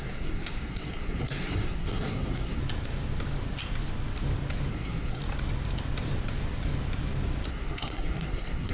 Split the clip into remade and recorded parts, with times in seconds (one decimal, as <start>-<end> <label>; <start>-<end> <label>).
0.0-2.6 remade; 2.6-4.7 recorded; 4.7-5.2 remade; 5.2-7.5 recorded; 7.5-8.7 remade